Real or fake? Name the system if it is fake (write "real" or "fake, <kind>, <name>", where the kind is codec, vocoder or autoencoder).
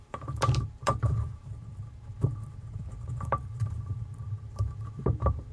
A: fake, vocoder, BigVGAN v2